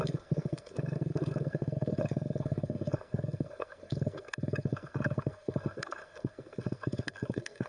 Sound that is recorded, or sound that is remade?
remade